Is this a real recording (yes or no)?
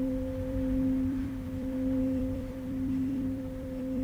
no